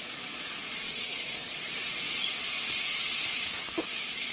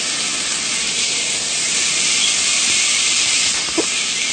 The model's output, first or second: first